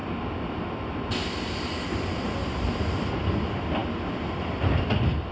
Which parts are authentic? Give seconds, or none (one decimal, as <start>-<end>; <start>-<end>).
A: 0.0-5.3